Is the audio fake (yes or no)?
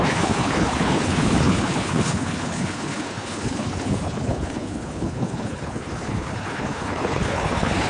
yes